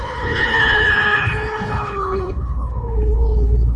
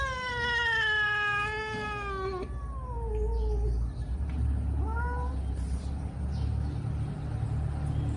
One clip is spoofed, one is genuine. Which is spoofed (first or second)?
first